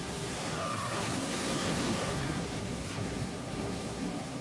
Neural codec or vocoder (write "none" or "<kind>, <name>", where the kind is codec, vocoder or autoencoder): codec, SNAC